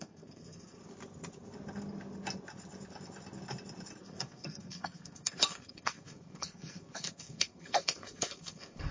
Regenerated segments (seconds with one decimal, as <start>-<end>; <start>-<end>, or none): 0.0-0.8; 4.0-8.9